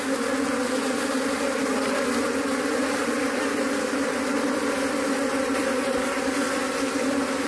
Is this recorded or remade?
remade